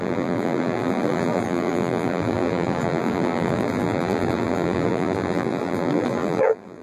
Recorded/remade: remade